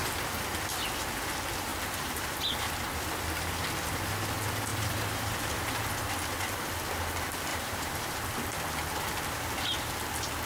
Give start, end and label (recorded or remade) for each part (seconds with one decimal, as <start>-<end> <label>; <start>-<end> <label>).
0.0-1.7 recorded; 1.7-2.4 remade; 2.4-4.7 recorded; 4.7-5.8 remade; 5.8-7.5 recorded; 7.5-8.3 remade; 8.3-10.5 recorded